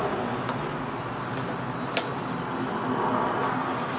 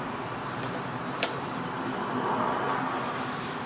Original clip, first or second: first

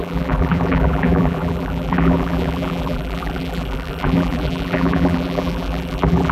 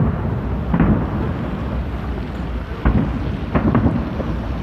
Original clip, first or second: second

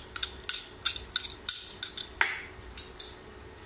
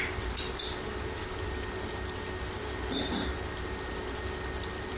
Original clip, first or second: first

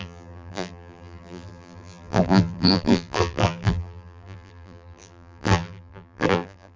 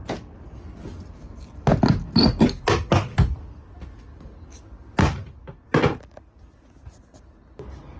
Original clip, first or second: second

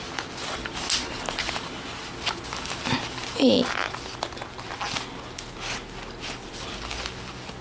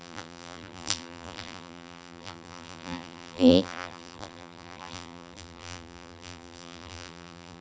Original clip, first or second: first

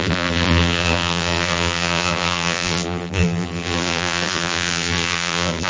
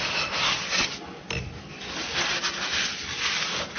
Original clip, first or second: second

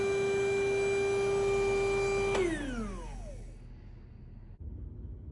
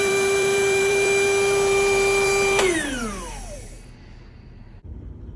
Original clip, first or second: first